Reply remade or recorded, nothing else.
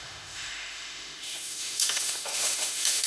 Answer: remade